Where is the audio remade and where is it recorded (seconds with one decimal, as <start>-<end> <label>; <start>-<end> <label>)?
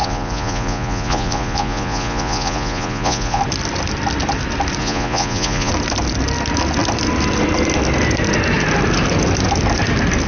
0.0-3.4 remade; 3.4-4.8 recorded; 4.8-5.7 remade; 5.7-10.3 recorded